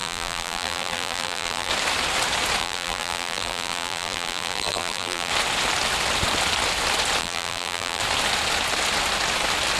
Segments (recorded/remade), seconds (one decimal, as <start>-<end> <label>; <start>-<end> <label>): 0.0-1.7 remade; 1.7-2.6 recorded; 2.6-5.3 remade; 5.3-7.2 recorded; 7.2-8.0 remade; 8.0-9.8 recorded